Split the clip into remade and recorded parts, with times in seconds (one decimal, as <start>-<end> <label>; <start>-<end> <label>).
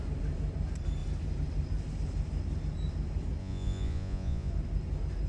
0.0-3.4 recorded; 3.4-4.5 remade; 4.5-5.3 recorded